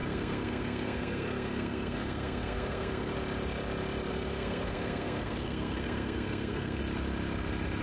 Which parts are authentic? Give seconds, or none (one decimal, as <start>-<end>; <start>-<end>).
3.1-4.1; 6.8-7.8